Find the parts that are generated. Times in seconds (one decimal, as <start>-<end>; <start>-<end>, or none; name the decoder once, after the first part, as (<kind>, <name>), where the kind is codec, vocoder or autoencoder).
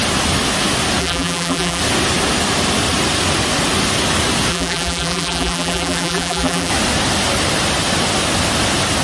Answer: 1.0-1.8 (vocoder, BigVGAN v2); 4.5-6.7